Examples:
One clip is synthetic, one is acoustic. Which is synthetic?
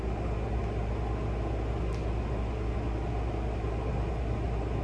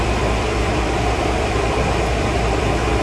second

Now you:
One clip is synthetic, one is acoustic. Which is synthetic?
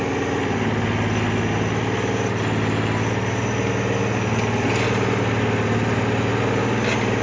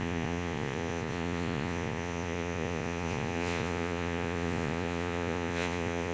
second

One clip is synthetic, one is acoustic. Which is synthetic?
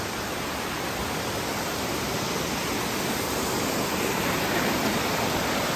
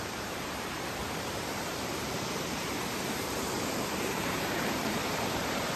second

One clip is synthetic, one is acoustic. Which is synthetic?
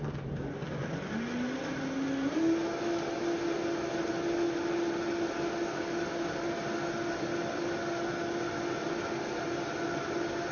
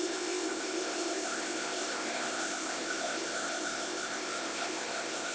second